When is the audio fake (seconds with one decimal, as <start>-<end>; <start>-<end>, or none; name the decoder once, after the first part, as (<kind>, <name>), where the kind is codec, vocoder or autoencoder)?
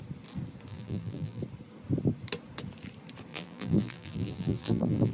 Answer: 0.7-1.4 (vocoder, BigVGAN v2); 3.3-5.1